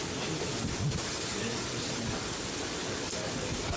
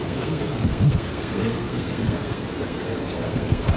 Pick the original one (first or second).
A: first